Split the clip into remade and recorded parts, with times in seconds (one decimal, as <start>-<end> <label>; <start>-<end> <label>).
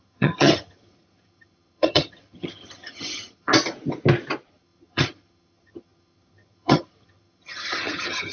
0.0-3.5 remade; 3.5-4.5 recorded; 4.5-8.3 remade